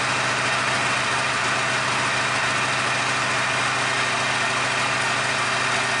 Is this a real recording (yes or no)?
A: yes